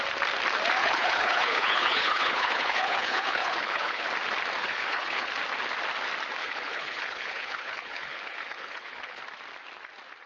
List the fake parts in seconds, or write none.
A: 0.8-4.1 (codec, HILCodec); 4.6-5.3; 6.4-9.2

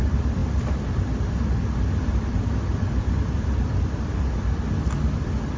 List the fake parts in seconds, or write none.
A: none

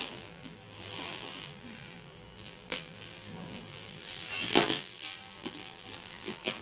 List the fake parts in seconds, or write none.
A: 0.0-6.6 (vocoder, BigVGAN v2)